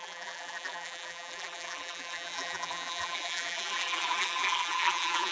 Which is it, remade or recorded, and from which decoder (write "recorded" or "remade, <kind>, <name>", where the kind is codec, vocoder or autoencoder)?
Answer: remade, vocoder, BigVGAN v2